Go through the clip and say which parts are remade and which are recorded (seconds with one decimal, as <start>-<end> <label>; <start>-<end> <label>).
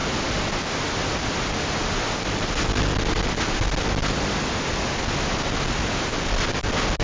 0.0-7.0 recorded